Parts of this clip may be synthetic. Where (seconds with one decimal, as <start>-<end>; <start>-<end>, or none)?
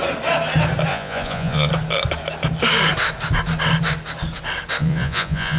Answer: 0.9-1.7; 4.8-5.6